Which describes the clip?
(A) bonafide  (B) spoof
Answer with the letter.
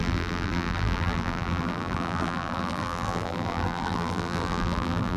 B